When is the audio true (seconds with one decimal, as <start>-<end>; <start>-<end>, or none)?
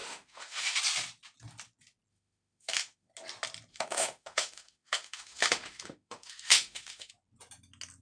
0.8-2.1; 3.1-3.7; 7.1-8.0